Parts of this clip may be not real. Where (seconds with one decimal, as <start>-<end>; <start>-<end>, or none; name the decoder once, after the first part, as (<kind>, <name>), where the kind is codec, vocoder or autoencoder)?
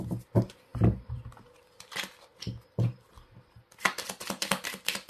none